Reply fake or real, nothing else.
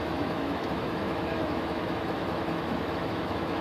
fake